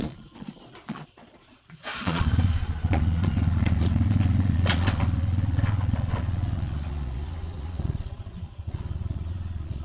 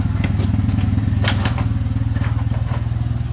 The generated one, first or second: first